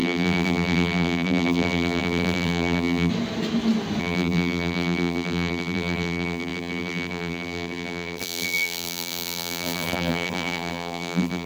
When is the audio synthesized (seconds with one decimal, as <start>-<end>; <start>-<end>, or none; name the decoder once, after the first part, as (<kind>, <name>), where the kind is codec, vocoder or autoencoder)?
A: 0.0-3.1 (vocoder, BigVGAN v2); 4.0-11.5